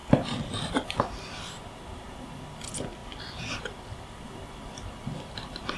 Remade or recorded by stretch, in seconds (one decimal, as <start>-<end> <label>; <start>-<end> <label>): 0.0-2.4 remade; 2.4-3.0 recorded; 3.0-5.8 remade